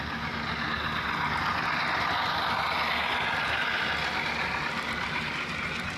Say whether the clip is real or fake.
real